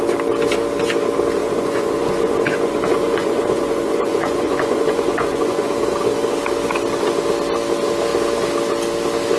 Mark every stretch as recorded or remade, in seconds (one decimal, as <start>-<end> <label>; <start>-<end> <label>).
0.0-1.4 recorded; 1.4-5.7 remade; 5.7-9.4 recorded